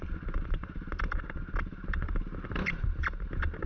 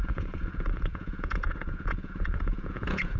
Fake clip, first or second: second